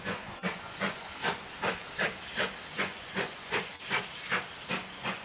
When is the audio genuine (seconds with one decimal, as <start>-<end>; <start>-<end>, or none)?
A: 1.1-2.8; 3.7-4.8